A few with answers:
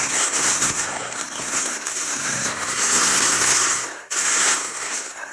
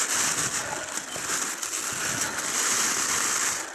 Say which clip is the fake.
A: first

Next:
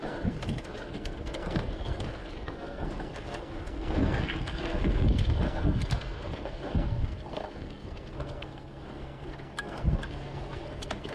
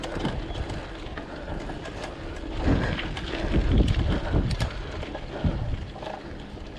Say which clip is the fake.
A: first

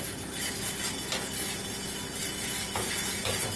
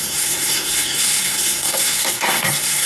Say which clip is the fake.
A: second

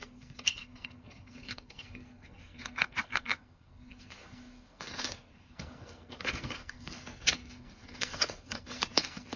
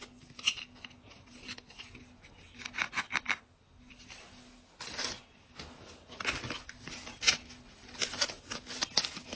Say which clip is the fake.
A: first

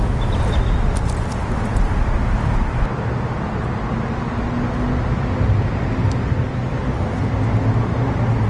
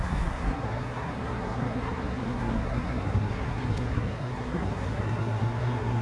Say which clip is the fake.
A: second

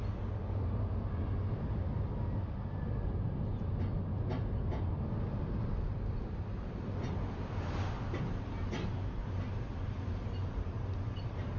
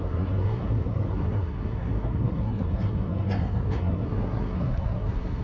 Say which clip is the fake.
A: second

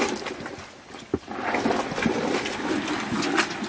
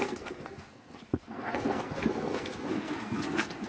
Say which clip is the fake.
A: second